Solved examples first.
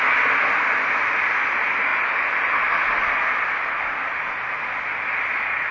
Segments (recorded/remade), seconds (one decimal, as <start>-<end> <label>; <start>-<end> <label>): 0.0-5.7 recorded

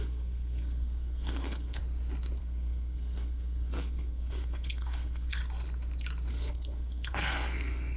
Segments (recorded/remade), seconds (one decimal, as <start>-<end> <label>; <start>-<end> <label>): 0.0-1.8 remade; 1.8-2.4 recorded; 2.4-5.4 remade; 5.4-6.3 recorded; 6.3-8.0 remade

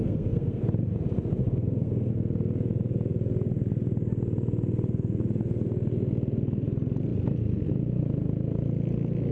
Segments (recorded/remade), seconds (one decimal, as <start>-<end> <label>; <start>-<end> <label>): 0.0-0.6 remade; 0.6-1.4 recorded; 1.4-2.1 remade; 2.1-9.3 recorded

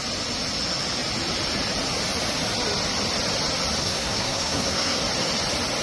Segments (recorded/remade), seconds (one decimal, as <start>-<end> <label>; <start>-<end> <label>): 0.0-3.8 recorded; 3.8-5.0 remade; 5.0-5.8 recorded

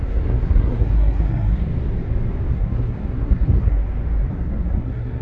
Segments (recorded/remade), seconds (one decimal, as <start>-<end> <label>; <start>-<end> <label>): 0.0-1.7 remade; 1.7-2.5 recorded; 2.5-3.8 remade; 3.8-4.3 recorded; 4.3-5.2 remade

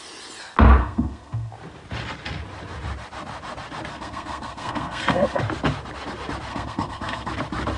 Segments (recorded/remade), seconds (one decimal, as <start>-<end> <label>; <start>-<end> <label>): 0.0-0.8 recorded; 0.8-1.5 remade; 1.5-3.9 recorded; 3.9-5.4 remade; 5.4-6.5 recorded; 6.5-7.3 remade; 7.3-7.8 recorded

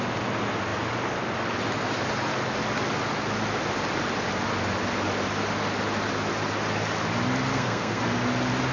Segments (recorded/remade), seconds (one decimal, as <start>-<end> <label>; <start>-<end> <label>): 0.0-7.5 recorded; 7.5-8.0 remade; 8.0-8.7 recorded